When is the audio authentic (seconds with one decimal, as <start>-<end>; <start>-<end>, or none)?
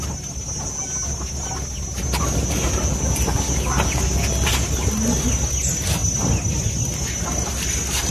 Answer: 0.0-8.1